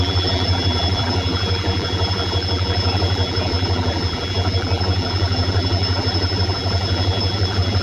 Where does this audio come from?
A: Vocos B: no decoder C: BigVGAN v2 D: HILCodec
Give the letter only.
C